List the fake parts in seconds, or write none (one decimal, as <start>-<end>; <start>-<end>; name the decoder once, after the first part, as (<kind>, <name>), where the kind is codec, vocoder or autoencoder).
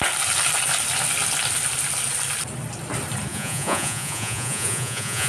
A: 3.3-5.3 (vocoder, Vocos)